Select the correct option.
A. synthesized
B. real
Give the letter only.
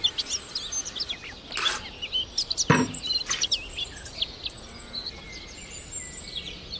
B